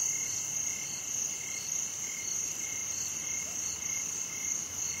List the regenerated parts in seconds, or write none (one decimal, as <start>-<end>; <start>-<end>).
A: none